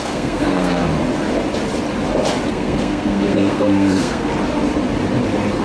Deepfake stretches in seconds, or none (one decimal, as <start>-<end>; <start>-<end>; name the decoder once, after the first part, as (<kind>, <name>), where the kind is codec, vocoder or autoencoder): 0.0-0.8 (codec, SNAC); 2.5-4.3

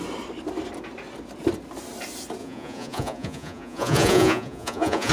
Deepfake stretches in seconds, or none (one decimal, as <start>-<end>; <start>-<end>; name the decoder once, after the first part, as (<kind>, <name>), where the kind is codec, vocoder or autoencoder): 2.4-5.1 (vocoder, Vocos)

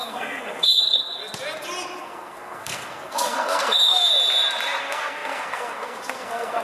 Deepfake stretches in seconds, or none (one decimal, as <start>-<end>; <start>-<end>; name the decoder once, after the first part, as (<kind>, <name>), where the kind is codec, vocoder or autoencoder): 0.0-1.2 (codec, SNAC); 2.0-4.1; 4.8-6.6

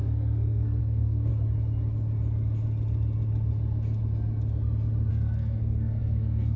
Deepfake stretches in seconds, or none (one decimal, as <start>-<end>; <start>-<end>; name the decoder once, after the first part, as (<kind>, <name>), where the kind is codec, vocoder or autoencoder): 0.0-1.3 (codec, SNAC); 5.1-6.6

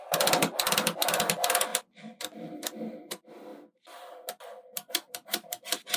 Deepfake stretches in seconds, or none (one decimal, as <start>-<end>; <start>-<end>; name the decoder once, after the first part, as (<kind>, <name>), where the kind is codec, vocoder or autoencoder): none

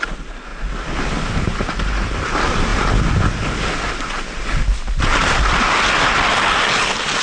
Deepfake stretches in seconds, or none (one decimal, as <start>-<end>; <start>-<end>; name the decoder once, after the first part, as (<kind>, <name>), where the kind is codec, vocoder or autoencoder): none

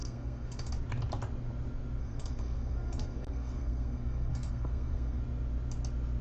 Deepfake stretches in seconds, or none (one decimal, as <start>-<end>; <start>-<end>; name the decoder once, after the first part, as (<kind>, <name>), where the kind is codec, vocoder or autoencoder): 0.0-0.7 (codec, SNAC); 2.0-5.2